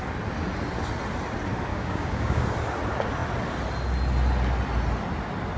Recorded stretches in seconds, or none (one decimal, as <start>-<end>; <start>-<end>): 0.0-1.7; 2.4-5.6